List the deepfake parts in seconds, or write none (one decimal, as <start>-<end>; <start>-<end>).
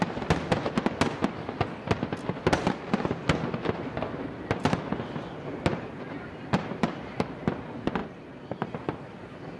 none